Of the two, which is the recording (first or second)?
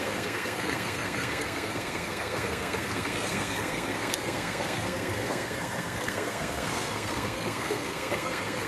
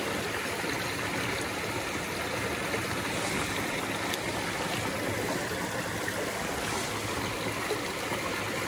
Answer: second